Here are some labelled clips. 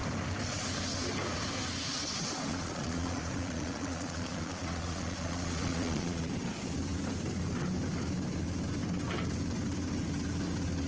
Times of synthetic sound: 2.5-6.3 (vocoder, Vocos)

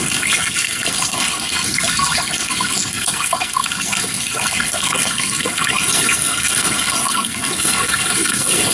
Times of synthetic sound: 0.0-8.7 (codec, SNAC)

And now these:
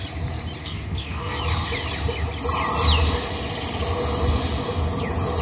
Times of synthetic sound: 0.6-1.4 (codec, SNAC)

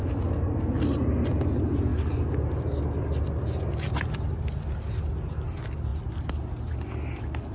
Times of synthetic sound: none

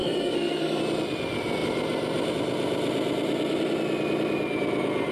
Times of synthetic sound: 0.0-0.8 (codec, SNAC)

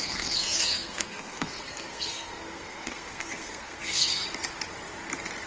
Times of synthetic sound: 0.0-4.2 (codec, SNAC)